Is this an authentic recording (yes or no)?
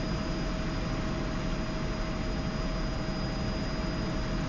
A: yes